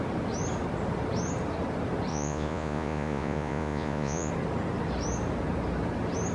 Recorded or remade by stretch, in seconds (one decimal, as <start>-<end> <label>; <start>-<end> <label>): 0.0-2.1 recorded; 2.1-4.3 remade; 4.3-6.3 recorded